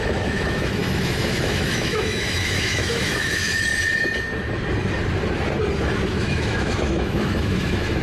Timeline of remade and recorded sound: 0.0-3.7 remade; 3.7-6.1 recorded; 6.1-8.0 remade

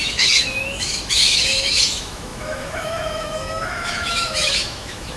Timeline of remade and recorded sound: 0.0-5.2 remade

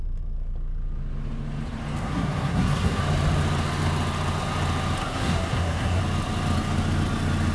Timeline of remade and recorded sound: 0.0-2.0 recorded; 2.0-3.0 remade; 3.0-5.0 recorded; 5.0-6.0 remade; 6.0-7.5 recorded

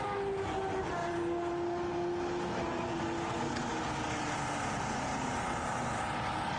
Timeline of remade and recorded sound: 0.0-6.6 recorded

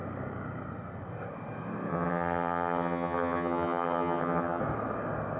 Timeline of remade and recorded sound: 0.0-1.9 recorded; 1.9-4.6 remade; 4.6-5.4 recorded